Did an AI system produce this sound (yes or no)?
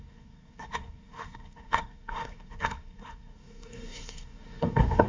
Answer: yes